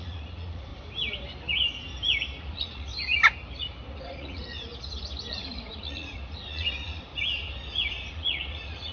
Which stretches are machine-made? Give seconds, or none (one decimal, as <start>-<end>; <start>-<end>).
0.0-0.7; 2.4-2.9; 4.0-4.7; 5.3-7.1; 8.1-8.9